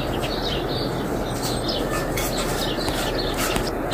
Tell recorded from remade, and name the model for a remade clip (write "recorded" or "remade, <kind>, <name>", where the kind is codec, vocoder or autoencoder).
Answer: recorded